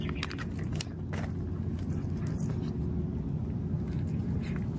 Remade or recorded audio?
recorded